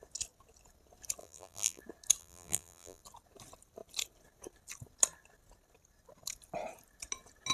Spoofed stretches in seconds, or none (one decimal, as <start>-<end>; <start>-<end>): 1.2-1.8; 2.2-3.0